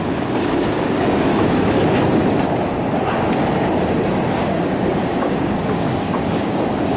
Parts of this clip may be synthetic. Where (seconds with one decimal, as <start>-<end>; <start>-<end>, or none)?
0.0-1.3; 4.3-7.0